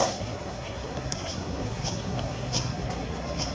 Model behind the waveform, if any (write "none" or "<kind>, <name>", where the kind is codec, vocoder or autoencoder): codec, SNAC